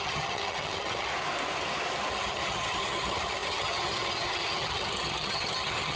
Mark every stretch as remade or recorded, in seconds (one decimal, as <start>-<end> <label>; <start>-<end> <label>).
0.0-1.1 remade; 1.1-2.1 recorded; 2.1-6.0 remade